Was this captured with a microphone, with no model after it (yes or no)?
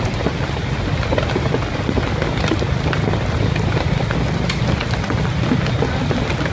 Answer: yes